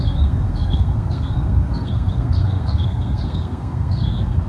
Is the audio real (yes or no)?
no